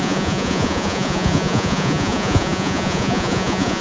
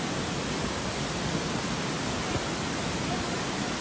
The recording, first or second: second